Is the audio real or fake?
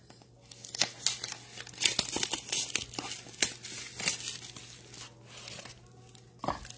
real